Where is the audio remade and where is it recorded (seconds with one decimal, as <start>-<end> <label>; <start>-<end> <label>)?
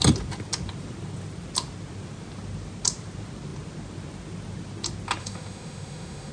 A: 0.0-5.2 recorded; 5.2-6.3 remade